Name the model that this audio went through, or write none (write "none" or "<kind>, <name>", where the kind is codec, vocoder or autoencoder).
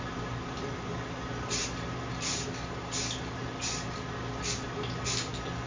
none